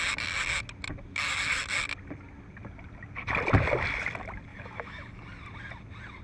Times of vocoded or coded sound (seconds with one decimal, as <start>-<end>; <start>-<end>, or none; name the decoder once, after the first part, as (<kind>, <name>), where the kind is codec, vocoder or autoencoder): 4.5-5.2 (autoencoder, DAC-VAE)